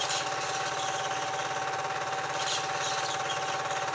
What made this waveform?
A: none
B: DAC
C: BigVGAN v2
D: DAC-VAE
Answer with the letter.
A